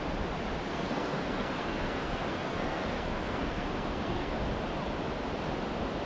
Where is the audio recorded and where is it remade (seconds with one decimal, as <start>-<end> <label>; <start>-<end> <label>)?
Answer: 0.0-0.7 recorded; 0.7-4.4 remade; 4.4-6.1 recorded